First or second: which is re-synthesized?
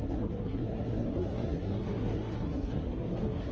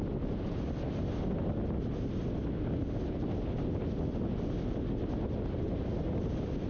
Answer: first